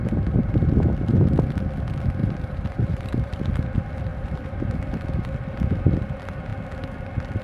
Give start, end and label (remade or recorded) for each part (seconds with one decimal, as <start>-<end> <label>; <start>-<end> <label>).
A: 0.0-2.2 recorded; 2.2-3.4 remade; 3.4-4.1 recorded; 4.1-4.8 remade; 4.8-7.4 recorded